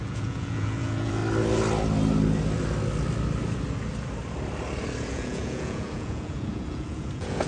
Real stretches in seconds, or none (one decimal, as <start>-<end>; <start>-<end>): 1.2-5.1